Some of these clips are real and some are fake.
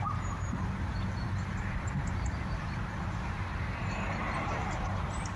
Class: fake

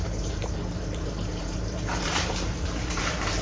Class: fake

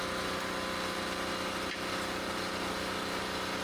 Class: real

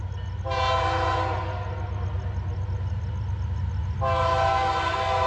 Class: real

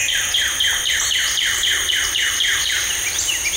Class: fake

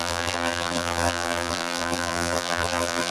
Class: fake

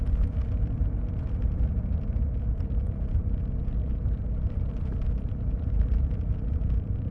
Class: fake